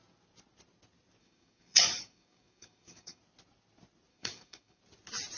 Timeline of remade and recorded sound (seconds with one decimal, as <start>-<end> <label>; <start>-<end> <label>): 0.0-1.2 recorded; 1.2-3.2 remade; 3.2-4.1 recorded; 4.1-4.8 remade; 4.8-5.4 recorded

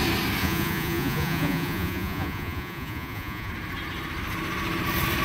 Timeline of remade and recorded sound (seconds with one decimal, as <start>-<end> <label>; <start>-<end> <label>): 0.0-0.4 recorded; 0.4-3.5 remade; 3.5-5.2 recorded

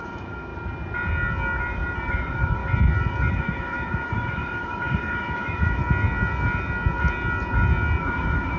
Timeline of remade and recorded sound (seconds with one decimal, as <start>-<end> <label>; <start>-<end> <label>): 0.0-0.5 remade; 0.5-2.1 recorded; 2.1-2.6 remade; 2.6-3.3 recorded; 3.3-5.8 remade; 5.8-8.0 recorded; 8.0-8.6 remade

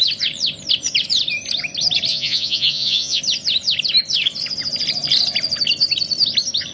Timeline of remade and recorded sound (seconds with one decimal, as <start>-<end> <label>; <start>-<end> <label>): 0.0-2.1 recorded; 2.1-3.2 remade; 3.2-6.7 recorded